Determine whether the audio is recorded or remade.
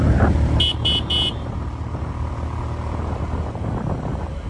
recorded